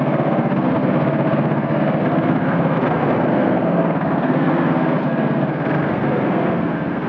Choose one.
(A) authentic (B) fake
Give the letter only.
B